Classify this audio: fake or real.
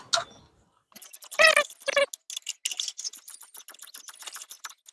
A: real